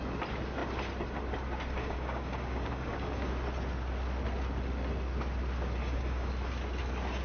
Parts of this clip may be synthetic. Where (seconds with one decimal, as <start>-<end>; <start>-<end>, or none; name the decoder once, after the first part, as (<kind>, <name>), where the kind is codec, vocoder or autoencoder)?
1.8-3.3 (codec, DAC); 5.8-6.3